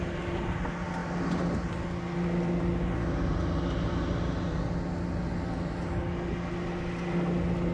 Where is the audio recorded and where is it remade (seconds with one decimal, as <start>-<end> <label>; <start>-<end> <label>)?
0.0-7.7 recorded